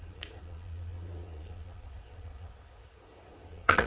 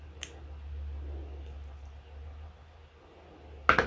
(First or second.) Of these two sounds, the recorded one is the second